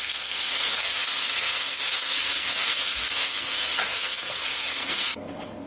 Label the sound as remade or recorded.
remade